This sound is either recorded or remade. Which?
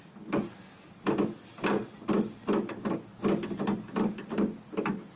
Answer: recorded